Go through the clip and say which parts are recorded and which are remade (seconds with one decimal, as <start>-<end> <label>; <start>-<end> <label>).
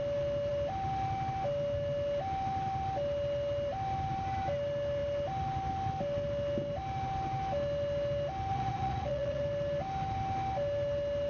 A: 0.0-8.5 recorded; 8.5-9.4 remade; 9.4-11.3 recorded